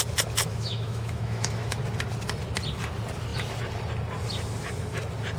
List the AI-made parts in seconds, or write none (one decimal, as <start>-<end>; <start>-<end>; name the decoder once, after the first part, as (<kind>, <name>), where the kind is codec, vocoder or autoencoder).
0.5-1.8 (autoencoder, DAC-VAE)